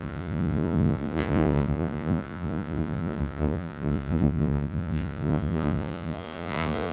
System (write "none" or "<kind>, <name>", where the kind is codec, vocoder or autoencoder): vocoder, Vocos